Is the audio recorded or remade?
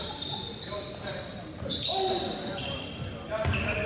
recorded